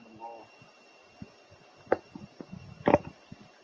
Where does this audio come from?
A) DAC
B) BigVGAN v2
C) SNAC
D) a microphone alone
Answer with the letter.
D